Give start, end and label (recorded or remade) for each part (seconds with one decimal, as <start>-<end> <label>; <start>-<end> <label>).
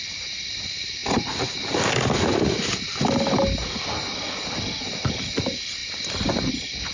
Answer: 0.0-6.9 recorded